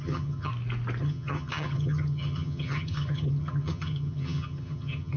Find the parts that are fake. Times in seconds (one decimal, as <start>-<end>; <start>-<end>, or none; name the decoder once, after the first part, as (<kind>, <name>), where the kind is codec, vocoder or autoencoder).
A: 0.0-0.5 (vocoder, HiFi-GAN); 1.0-5.2

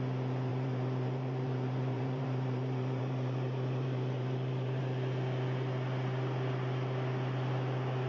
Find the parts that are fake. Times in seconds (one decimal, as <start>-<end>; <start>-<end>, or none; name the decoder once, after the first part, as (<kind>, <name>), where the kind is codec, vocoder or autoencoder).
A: 0.5-4.8 (vocoder, BigVGAN v2)

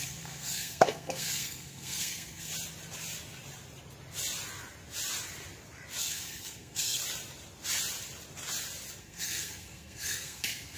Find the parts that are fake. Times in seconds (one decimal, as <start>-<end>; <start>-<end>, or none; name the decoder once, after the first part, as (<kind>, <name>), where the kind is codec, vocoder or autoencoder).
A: 0.0-2.5 (codec, SNAC); 6.0-7.0; 9.0-10.8

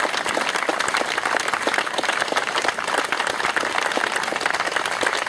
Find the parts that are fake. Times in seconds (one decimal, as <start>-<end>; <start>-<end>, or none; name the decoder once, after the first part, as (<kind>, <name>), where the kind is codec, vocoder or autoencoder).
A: none

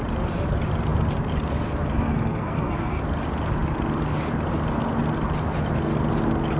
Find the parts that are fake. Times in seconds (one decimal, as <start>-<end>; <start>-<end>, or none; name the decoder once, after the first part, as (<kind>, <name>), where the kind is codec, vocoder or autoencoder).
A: 1.9-3.0 (codec, SNAC)

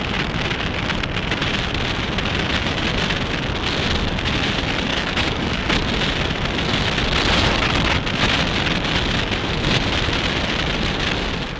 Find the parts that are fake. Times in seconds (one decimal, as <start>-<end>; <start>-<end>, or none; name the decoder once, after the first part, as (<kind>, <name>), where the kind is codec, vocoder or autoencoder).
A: 4.9-5.6 (codec, DAC)

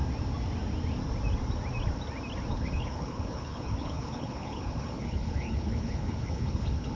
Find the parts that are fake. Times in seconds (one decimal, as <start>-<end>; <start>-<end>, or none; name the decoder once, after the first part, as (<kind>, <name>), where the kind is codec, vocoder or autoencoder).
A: 2.5-7.0 (codec, HILCodec)

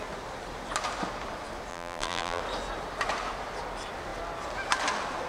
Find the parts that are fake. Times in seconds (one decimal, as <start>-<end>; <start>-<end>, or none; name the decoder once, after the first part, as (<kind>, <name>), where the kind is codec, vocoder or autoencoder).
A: 1.7-2.4 (vocoder, BigVGAN v2)